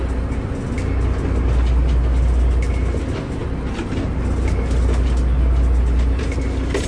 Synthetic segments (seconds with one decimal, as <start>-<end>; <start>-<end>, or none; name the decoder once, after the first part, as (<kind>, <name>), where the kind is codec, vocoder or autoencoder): none